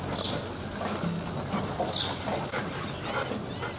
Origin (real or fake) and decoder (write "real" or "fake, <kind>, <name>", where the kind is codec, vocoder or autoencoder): real